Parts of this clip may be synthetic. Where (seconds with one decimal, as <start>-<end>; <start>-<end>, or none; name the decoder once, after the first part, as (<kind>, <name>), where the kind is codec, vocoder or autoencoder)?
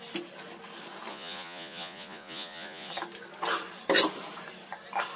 1.1-2.9 (vocoder, Vocos)